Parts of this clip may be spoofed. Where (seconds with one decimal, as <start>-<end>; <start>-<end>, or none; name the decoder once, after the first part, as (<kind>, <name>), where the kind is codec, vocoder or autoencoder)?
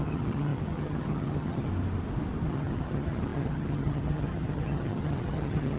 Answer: 0.0-1.7 (vocoder, HiFi-GAN); 2.5-5.8